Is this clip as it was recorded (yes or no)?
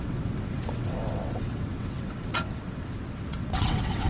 no